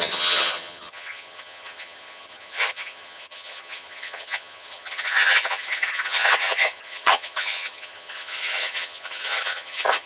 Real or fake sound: fake